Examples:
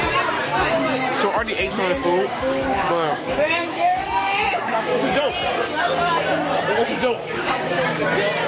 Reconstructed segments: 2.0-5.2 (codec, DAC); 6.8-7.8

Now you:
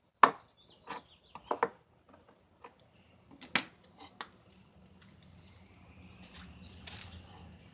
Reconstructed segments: none

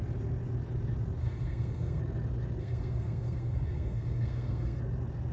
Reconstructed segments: 1.2-2.0 (codec, SNAC); 2.6-4.8